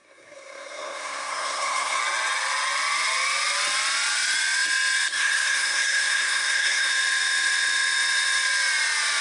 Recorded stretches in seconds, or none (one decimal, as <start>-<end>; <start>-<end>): 2.0-5.1; 6.9-9.2